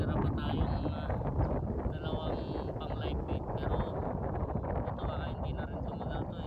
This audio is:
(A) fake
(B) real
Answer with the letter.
B